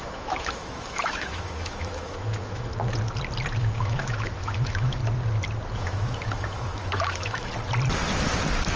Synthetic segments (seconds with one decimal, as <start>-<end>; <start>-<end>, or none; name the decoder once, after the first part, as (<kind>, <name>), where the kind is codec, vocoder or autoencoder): 0.0-2.7 (autoencoder, DAC-VAE); 3.6-5.0; 5.7-7.5